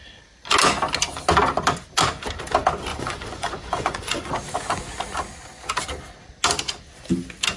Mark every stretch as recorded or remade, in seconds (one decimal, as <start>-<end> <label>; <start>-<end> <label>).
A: 0.0-2.9 recorded; 2.9-4.3 remade; 4.3-7.6 recorded